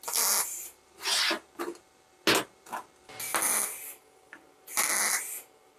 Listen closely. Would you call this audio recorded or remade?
recorded